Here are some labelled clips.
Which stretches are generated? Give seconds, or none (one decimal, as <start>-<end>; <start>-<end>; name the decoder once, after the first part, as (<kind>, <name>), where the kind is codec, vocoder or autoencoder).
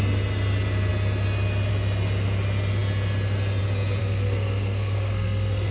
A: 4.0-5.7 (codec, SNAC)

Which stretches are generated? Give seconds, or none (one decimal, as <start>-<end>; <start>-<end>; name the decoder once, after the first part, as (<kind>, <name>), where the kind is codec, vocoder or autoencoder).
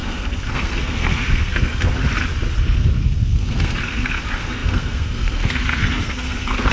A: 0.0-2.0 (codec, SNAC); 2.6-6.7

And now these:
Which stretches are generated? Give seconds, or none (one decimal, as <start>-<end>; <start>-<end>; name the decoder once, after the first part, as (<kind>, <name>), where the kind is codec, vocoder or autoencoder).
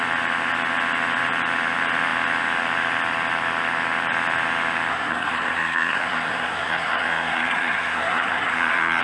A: 4.9-9.0 (codec, SNAC)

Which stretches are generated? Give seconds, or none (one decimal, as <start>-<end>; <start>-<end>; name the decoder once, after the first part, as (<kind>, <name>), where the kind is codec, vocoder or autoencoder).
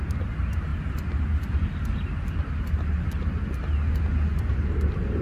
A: none